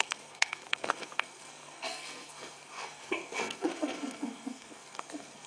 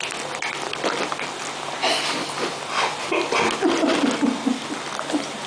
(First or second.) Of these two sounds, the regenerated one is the first